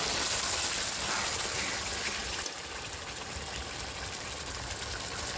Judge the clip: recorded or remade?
recorded